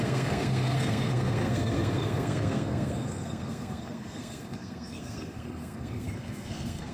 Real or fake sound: fake